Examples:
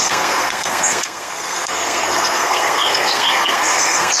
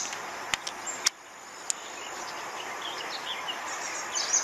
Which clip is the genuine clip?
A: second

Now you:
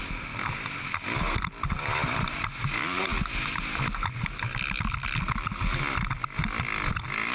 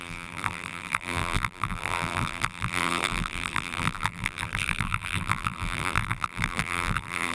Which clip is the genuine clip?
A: first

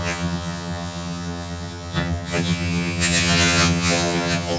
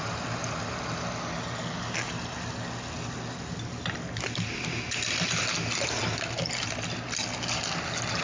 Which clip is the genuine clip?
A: second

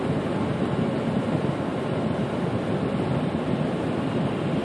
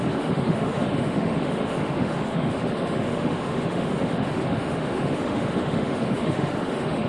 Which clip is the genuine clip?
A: first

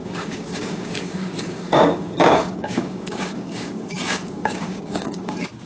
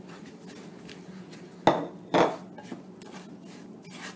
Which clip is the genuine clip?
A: second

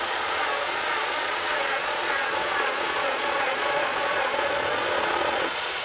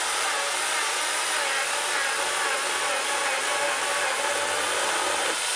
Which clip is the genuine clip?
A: second